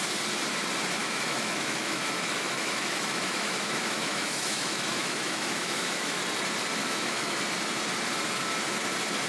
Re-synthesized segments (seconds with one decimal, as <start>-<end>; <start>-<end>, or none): 1.0-6.2; 6.8-7.4